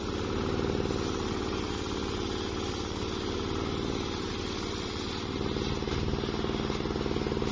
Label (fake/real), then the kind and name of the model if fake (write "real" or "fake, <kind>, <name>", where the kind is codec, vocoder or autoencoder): real